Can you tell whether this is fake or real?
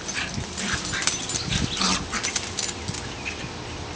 real